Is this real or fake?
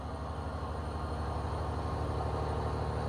real